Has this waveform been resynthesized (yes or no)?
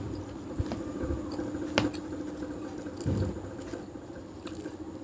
no